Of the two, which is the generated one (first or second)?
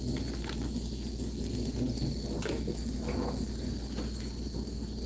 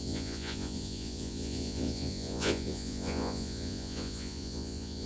second